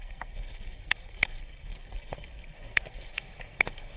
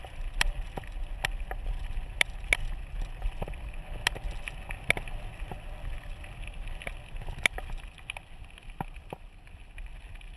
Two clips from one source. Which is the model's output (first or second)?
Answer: first